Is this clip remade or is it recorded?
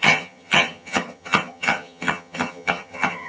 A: remade